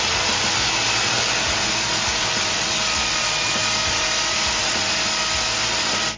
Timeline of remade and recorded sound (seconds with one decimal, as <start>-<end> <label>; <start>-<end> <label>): 0.0-6.2 recorded

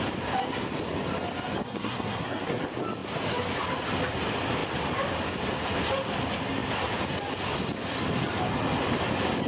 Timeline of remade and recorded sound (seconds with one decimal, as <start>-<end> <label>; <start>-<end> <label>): 0.0-1.6 recorded; 1.6-2.6 remade; 2.6-9.5 recorded

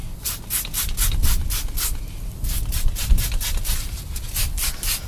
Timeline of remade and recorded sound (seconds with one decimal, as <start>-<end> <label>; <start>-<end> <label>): 0.0-5.1 recorded

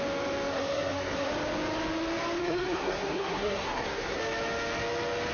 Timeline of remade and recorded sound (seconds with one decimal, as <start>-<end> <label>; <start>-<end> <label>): 0.0-0.5 recorded; 0.5-1.3 remade; 1.3-2.4 recorded; 2.4-4.2 remade; 4.2-5.3 recorded